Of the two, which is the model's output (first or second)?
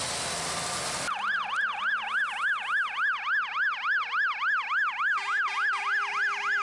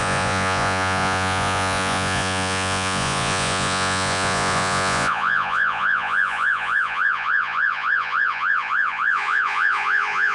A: second